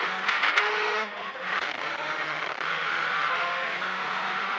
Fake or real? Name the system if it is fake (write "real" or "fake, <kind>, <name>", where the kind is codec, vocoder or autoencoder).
fake, autoencoder, DAC-VAE